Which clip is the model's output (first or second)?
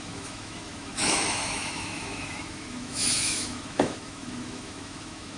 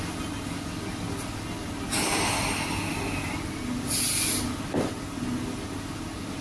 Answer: first